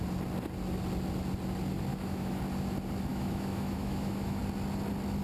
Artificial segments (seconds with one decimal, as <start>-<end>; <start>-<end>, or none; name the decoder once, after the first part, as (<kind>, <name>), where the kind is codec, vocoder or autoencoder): 1.9-2.4 (autoencoder, DAC-VAE); 3.1-4.4